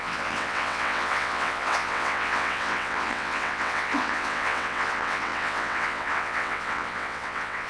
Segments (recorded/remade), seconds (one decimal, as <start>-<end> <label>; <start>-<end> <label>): 0.0-7.7 remade